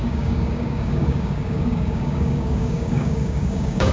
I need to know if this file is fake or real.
fake